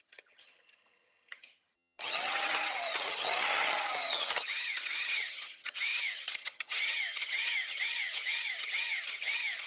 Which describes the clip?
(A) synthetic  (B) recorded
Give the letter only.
A